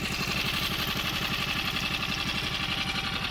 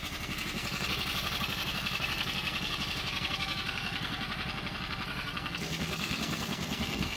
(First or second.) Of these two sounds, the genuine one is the first